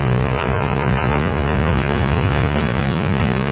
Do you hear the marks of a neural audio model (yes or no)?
yes